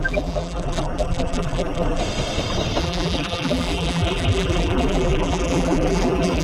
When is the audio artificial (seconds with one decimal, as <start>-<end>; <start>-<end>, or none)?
0.0-2.0; 2.8-6.4